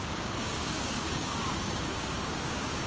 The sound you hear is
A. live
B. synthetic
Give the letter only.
B